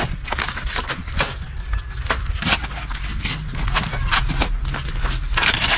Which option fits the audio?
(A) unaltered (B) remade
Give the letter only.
A